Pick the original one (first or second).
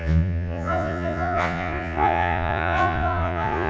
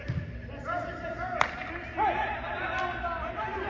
second